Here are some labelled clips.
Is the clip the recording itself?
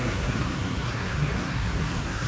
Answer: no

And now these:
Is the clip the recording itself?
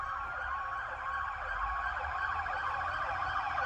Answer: yes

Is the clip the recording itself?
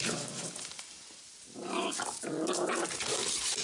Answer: yes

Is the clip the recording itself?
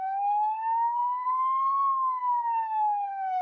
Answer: no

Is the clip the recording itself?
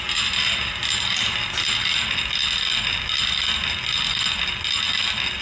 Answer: yes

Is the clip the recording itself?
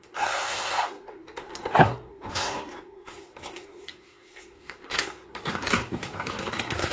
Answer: no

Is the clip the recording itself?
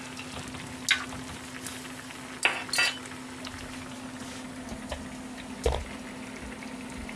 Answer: yes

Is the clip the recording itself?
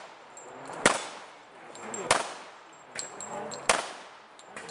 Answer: yes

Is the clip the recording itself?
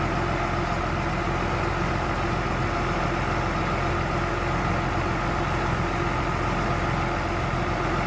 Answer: yes